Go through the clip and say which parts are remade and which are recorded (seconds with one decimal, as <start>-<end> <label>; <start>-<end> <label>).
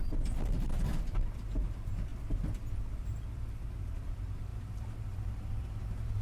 0.0-0.9 remade; 0.9-1.5 recorded; 1.5-2.1 remade; 2.1-2.9 recorded; 2.9-6.2 remade